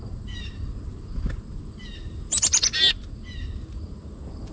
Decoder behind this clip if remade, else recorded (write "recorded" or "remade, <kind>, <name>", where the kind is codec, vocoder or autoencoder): recorded